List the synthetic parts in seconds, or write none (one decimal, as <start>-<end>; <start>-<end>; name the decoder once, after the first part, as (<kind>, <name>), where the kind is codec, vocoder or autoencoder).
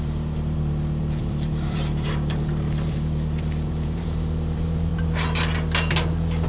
0.0-4.9 (vocoder, BigVGAN v2)